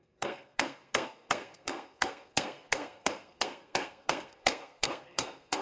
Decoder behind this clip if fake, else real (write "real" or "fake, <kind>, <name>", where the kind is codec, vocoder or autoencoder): fake, codec, SNAC